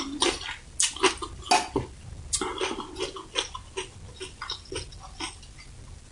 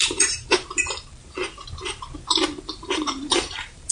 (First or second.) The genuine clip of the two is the first